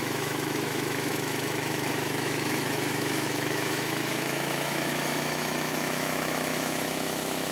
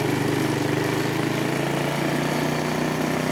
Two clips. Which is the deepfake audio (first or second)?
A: first